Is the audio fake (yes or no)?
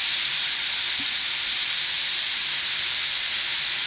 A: no